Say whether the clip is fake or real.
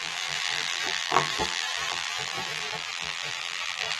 fake